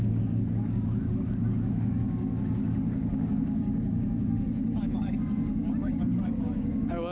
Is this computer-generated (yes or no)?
yes